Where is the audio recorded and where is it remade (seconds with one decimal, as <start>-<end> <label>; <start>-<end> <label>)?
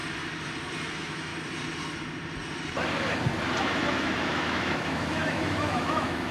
0.0-0.9 recorded; 0.9-1.3 remade; 1.3-3.6 recorded; 3.6-6.3 remade